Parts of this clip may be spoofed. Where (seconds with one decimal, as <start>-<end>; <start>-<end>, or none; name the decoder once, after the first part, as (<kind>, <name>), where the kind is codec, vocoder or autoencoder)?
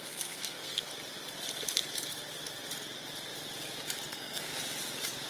0.0-0.9 (codec, SNAC); 4.1-4.5